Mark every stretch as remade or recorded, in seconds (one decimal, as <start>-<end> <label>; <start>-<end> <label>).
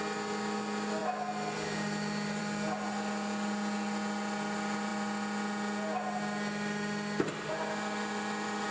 0.0-8.7 recorded